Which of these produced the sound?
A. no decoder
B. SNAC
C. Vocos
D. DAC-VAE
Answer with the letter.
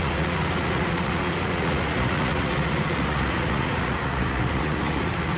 C